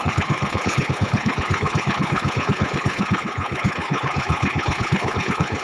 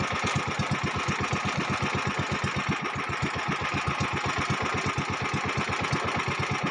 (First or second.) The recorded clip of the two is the second